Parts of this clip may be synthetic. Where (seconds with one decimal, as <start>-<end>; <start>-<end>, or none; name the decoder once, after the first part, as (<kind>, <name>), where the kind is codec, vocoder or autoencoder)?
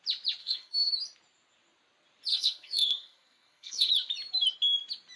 0.4-0.9 (codec, SNAC); 2.3-3.9